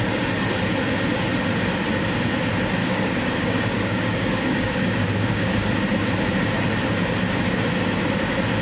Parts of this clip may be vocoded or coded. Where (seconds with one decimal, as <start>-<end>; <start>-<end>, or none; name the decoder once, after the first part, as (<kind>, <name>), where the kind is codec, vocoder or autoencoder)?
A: 2.8-5.7 (codec, DAC)